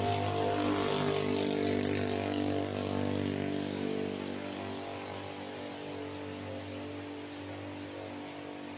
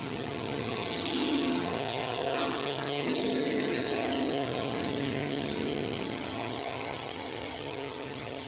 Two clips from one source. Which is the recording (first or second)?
first